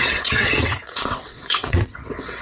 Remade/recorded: remade